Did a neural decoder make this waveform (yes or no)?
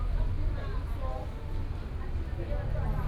no